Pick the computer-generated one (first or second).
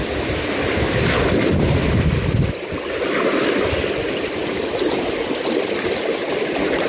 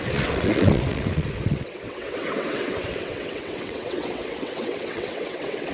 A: second